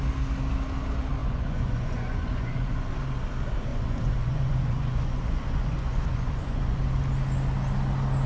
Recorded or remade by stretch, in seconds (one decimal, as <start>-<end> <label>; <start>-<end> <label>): 0.0-1.2 recorded; 1.2-2.9 remade; 2.9-3.7 recorded; 3.7-6.8 remade; 6.8-8.3 recorded